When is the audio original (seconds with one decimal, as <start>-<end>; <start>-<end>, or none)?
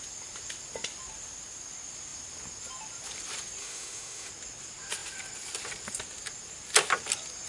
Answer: 0.0-3.6; 4.3-7.5